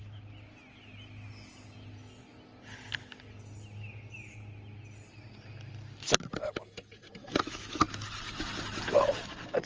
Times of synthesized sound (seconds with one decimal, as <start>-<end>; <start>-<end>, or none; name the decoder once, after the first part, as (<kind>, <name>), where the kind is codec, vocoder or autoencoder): 7.2-7.8 (autoencoder, DAC-VAE)